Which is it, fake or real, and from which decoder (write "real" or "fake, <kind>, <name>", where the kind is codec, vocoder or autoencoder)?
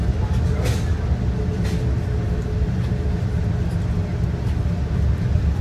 real